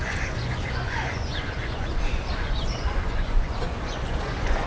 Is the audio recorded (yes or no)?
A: no